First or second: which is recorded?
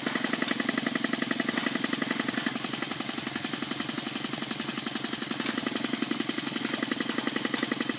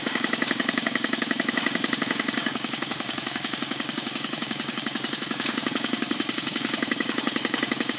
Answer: first